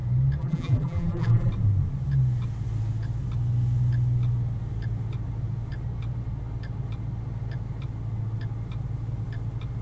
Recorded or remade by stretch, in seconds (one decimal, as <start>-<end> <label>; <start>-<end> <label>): 0.0-0.4 recorded; 0.4-1.5 remade; 1.5-9.8 recorded